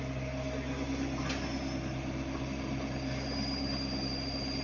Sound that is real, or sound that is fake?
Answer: real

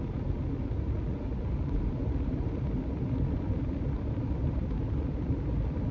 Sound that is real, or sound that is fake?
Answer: real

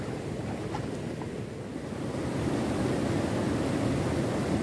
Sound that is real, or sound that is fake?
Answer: real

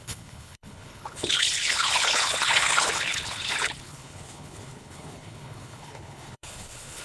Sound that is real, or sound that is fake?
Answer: fake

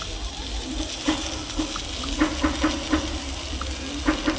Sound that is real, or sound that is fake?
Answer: real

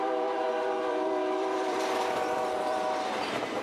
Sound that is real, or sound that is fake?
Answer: fake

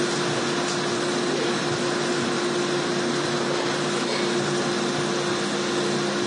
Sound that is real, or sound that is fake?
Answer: real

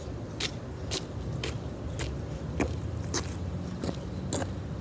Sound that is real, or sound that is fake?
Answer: real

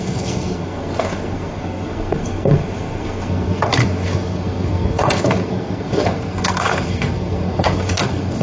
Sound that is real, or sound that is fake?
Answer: fake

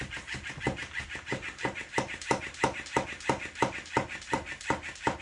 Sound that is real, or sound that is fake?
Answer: real